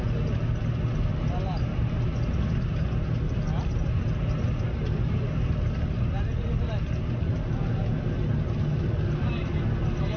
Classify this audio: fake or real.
real